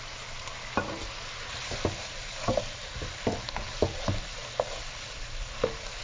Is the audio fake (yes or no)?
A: no